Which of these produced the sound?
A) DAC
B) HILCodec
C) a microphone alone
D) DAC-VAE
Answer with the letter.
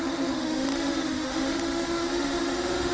D